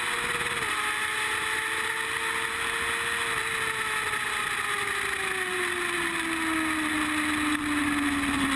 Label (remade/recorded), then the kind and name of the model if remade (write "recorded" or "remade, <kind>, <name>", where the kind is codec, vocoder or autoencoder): recorded